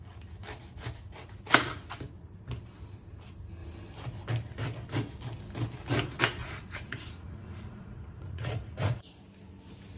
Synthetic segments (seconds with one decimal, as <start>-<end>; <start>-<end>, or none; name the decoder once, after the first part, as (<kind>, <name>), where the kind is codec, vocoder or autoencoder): 6.4-9.2 (vocoder, Vocos)